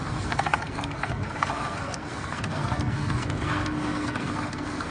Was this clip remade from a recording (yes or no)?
yes